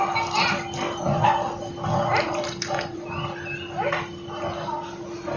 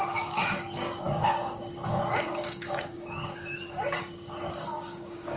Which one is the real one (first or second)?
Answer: first